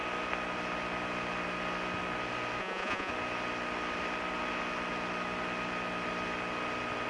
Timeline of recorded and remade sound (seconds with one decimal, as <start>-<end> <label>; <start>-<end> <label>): 0.0-2.6 recorded; 2.6-3.1 remade; 3.1-7.1 recorded